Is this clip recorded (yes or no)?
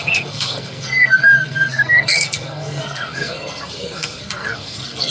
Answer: no